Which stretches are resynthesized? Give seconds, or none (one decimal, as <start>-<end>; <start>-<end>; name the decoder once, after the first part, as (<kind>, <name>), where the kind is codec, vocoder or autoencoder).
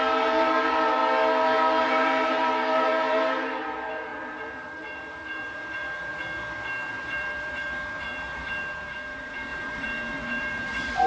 0.0-1.0 (vocoder, BigVGAN v2); 1.8-6.1; 6.9-11.1